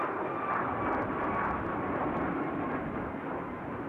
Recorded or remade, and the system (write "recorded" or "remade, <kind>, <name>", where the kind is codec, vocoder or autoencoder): recorded